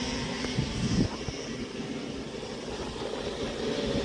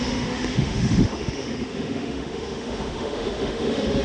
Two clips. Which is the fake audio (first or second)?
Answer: second